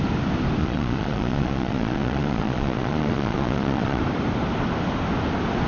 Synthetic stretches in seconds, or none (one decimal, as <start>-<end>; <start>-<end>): 0.6-4.0